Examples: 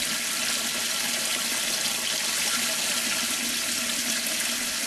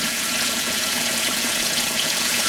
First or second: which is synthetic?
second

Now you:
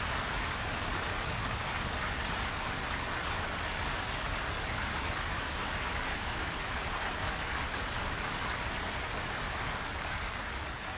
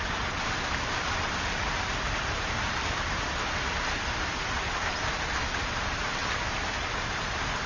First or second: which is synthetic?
first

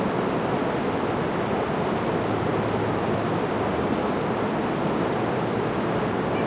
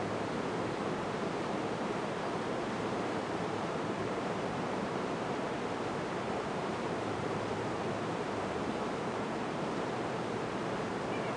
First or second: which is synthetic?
second